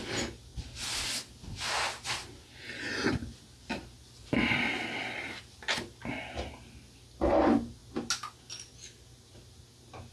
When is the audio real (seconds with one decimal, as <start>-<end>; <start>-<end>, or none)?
0.0-10.1